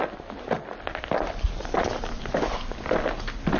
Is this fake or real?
real